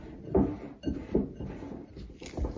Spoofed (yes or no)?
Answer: no